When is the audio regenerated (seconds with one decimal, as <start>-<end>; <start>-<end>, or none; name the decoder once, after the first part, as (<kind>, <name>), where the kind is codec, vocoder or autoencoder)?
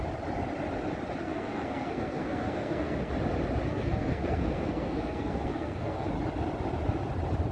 1.2-3.1 (codec, SNAC); 3.7-6.1